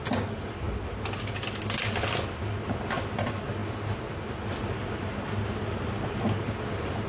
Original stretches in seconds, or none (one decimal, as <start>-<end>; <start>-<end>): 0.0-7.1